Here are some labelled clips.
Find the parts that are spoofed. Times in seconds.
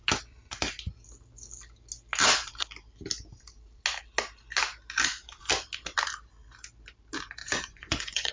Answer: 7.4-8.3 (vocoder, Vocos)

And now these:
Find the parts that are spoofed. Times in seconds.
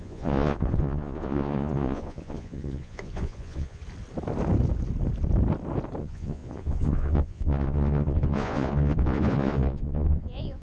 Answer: 0.0-3.8 (vocoder, Vocos); 6.0-10.6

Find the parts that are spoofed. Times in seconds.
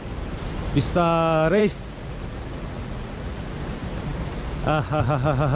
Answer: 1.6-3.5 (vocoder, Vocos)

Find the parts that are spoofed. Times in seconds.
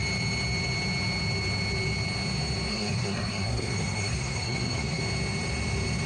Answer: 2.7-5.0 (codec, SNAC)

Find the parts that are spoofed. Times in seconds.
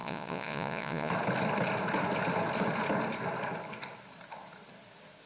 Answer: 0.0-1.1 (vocoder, Vocos)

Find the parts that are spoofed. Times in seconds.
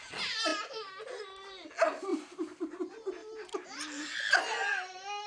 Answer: 2.1-2.8 (vocoder, BigVGAN v2); 3.2-4.3